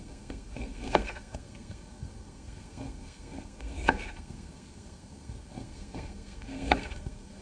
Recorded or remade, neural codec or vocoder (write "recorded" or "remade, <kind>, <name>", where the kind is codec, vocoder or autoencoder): remade, codec, SNAC